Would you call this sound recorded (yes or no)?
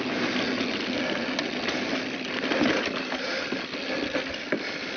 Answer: yes